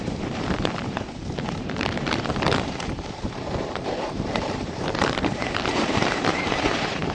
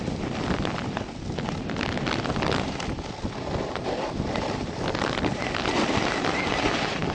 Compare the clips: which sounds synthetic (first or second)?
first